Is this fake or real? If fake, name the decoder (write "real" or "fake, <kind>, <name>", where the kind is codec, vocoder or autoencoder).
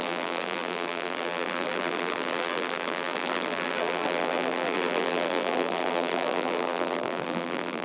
fake, vocoder, BigVGAN v2